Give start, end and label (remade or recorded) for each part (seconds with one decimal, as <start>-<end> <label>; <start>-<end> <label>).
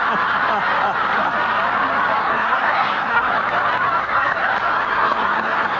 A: 0.0-2.2 recorded; 2.2-3.3 remade; 3.3-4.0 recorded; 4.0-4.5 remade; 4.5-4.9 recorded; 4.9-5.8 remade